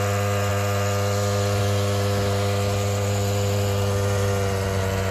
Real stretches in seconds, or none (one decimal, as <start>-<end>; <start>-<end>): 0.0-5.1